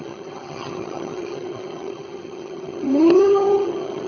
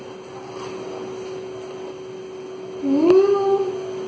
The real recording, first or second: second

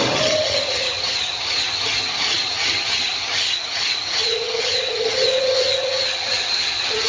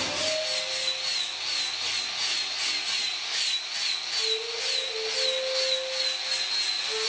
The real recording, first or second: second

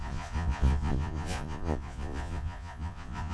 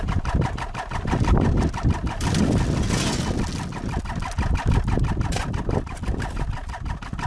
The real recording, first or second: second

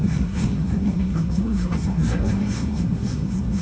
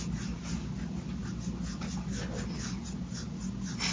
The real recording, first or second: second